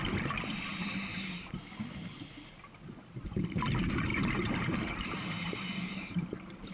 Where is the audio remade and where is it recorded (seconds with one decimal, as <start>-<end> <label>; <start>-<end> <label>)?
0.0-4.1 recorded; 4.1-6.7 remade